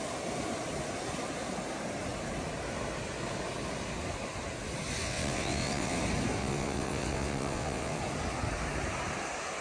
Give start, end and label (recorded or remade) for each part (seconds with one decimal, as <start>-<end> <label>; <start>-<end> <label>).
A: 0.0-5.0 recorded; 5.0-6.0 remade; 6.0-6.4 recorded; 6.4-8.0 remade; 8.0-9.6 recorded